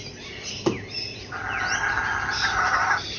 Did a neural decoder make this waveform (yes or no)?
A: no